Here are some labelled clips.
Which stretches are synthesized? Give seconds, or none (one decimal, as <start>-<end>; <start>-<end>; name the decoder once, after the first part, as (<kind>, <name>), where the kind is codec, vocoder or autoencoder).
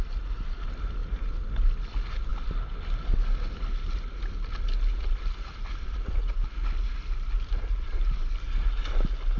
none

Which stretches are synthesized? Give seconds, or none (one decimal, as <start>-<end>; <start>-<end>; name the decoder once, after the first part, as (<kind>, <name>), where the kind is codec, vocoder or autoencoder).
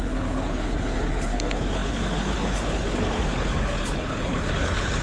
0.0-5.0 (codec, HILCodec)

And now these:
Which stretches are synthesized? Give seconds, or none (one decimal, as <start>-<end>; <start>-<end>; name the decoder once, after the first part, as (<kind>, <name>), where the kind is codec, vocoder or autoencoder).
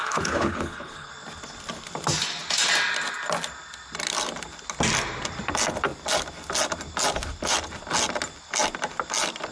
0.0-1.1 (codec, HILCodec)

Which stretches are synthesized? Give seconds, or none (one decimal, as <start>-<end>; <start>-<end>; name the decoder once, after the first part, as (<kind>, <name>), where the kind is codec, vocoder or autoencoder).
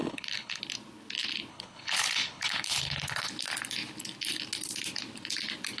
0.0-0.6 (codec, HILCodec); 1.5-3.3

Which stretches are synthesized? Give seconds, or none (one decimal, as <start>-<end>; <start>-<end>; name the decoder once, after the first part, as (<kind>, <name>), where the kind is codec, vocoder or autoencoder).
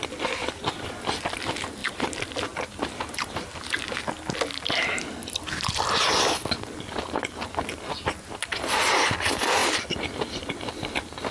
none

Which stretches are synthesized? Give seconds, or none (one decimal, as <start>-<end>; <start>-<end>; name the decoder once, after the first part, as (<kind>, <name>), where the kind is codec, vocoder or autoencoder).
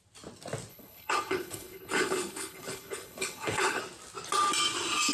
0.7-3.8 (codec, HILCodec)